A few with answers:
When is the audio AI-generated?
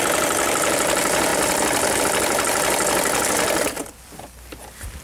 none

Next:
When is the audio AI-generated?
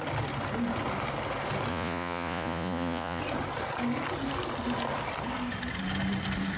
1.7-3.2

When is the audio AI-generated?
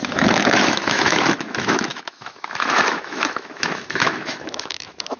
0.0-5.2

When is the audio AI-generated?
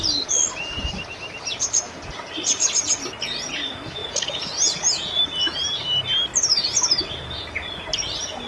4.0-5.2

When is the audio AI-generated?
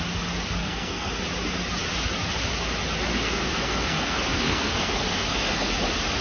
0.6-1.2; 3.1-5.7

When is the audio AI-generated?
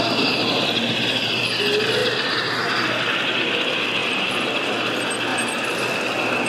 2.0-2.6; 4.0-4.7; 5.3-6.0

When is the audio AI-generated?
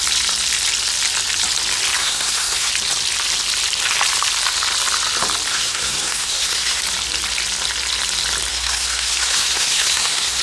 2.0-2.7; 5.5-6.8; 8.5-10.4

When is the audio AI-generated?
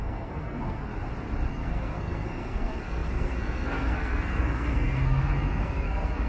0.0-0.9; 1.5-6.3